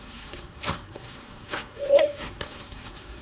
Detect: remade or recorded remade